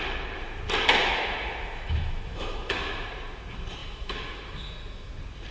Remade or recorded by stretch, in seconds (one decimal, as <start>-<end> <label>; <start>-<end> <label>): 0.0-1.0 recorded; 1.0-3.1 remade; 3.1-3.8 recorded; 3.8-5.1 remade; 5.1-5.5 recorded